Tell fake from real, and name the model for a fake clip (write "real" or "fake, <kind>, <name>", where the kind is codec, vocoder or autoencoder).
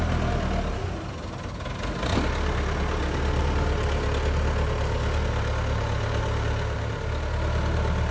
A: real